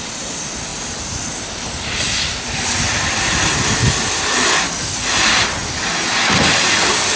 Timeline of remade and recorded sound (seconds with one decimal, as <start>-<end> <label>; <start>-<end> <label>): 0.0-7.2 recorded